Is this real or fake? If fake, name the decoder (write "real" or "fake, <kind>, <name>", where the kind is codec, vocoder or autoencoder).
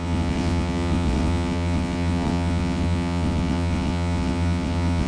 fake, vocoder, WaveNeXt